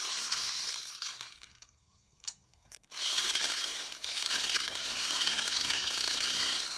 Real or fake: fake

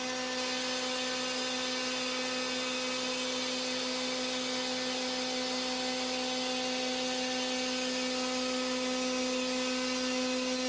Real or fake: real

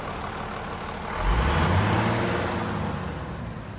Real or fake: real